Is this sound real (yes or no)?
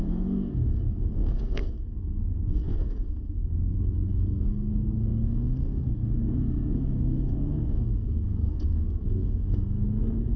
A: no